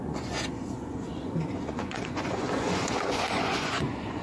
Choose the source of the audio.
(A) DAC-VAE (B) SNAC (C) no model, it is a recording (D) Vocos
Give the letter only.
D